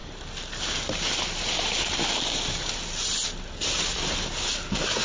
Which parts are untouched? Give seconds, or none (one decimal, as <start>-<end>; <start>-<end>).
0.0-5.0